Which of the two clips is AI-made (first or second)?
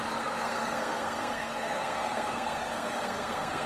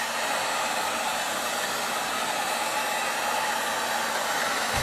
first